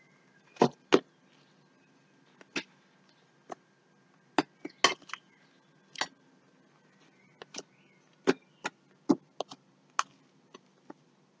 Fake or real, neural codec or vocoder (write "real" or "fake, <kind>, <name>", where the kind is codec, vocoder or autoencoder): real